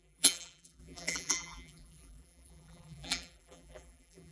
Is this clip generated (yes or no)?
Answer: yes